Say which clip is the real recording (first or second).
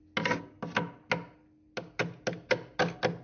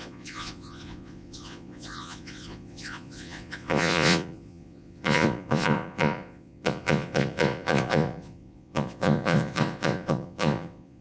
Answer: first